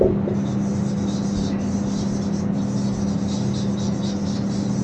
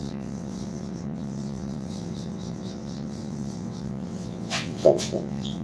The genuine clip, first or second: first